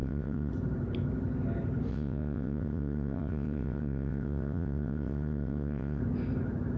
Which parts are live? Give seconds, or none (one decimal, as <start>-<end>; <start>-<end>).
0.5-1.9; 6.0-6.8